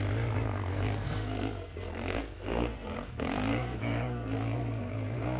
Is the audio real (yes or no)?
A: no